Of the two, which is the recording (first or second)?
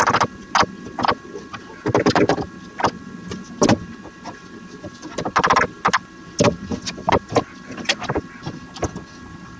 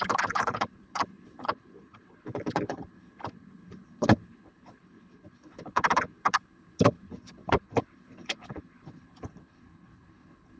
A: first